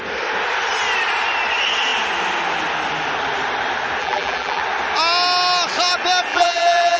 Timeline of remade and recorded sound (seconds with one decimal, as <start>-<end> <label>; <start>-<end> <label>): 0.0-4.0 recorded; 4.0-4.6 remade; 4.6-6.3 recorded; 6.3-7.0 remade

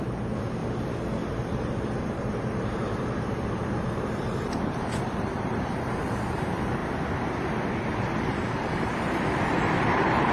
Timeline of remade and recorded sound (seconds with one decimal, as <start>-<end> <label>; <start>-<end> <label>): 0.0-0.6 remade; 0.6-1.3 recorded; 1.3-6.8 remade; 6.8-7.9 recorded; 7.9-10.3 remade

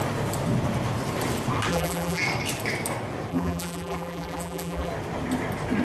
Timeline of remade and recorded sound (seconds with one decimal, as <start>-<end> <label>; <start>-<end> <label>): 0.0-1.7 recorded; 1.7-2.2 remade; 2.2-3.3 recorded; 3.3-4.9 remade; 4.9-5.8 recorded

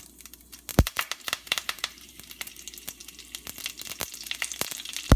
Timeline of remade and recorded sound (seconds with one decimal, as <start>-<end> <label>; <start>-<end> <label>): 0.0-0.7 recorded; 0.7-2.5 remade; 2.5-5.2 recorded